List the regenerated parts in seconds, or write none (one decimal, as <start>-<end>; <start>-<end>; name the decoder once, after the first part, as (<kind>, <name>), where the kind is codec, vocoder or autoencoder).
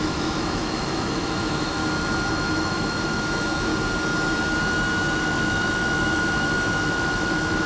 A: 0.0-1.8 (autoencoder, DAC-VAE); 2.3-3.7; 5.2-7.7